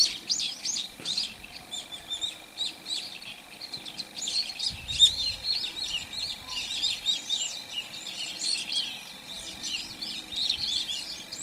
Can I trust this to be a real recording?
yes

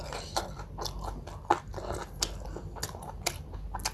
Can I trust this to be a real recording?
yes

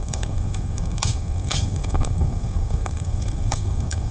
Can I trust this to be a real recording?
no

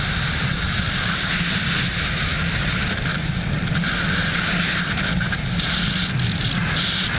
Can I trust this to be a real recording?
yes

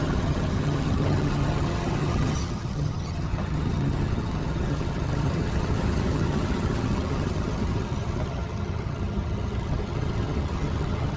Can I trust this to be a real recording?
no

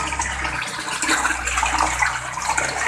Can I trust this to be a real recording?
yes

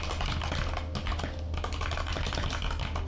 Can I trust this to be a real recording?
yes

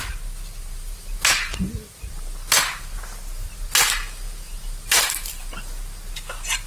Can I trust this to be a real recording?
yes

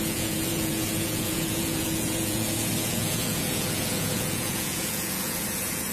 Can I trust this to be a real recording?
no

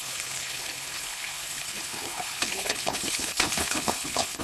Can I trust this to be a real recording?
no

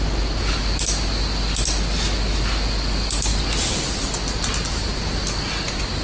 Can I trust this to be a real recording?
yes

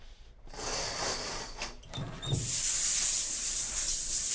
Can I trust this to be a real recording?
yes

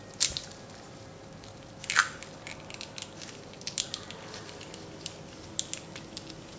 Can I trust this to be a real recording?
yes